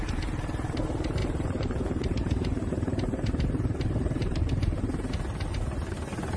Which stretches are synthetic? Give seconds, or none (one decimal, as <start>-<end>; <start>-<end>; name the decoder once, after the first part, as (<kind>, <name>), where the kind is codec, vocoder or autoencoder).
1.2-4.8 (vocoder, BigVGAN v2)